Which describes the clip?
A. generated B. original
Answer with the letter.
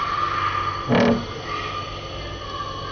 B